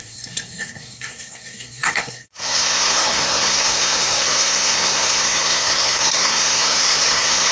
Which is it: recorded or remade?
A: remade